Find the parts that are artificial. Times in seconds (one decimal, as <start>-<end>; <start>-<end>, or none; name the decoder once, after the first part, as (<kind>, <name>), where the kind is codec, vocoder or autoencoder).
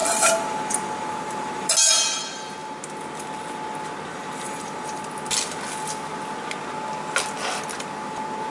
0.0-1.7 (vocoder, BigVGAN v2); 4.1-5.0